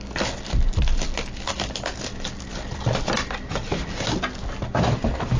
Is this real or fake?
real